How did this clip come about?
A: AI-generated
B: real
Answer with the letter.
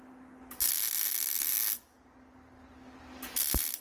B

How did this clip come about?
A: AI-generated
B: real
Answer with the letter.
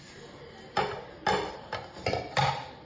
B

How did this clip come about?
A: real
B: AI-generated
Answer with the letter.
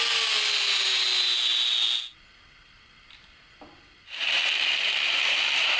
A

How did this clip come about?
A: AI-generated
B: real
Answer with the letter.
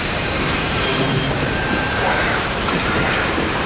A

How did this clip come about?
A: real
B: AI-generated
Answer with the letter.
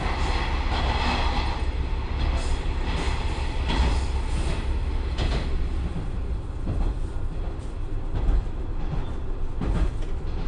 A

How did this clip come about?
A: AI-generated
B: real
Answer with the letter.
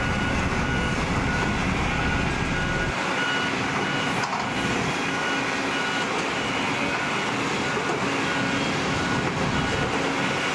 B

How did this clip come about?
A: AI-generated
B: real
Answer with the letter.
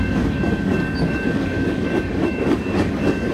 A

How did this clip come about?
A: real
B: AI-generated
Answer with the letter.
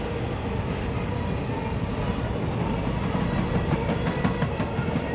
A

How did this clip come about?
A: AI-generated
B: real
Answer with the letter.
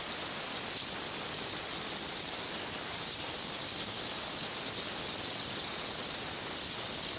B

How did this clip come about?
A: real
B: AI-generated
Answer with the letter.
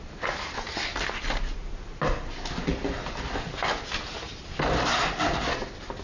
A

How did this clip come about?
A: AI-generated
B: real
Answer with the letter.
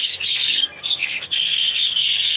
A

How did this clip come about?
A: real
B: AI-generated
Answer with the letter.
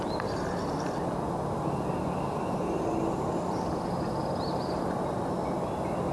A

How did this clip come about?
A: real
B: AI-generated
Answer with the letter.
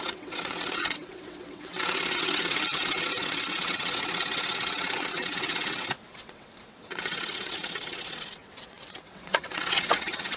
B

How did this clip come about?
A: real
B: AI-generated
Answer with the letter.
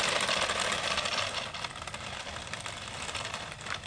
A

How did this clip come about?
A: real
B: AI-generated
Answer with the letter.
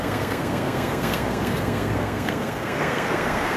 B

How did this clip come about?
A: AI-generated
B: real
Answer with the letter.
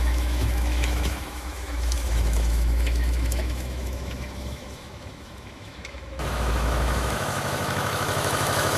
A